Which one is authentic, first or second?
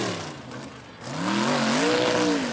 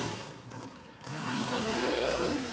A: first